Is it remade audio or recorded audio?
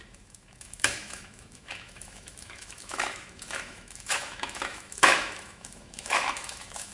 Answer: remade